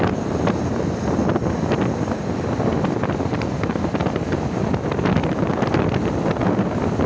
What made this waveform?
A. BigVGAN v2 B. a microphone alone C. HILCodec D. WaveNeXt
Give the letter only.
B